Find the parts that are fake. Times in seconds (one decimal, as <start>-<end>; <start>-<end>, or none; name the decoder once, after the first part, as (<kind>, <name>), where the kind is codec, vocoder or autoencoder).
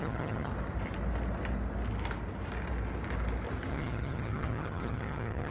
0.0-0.5 (vocoder, HiFi-GAN); 3.7-5.5